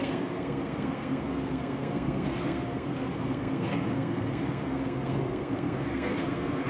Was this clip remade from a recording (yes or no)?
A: yes